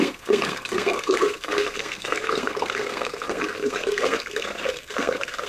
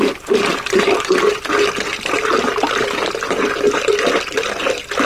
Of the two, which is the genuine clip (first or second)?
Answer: second